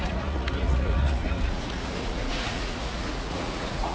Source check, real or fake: fake